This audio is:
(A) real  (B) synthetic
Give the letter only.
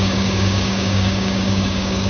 B